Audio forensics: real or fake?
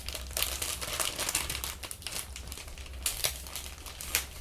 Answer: fake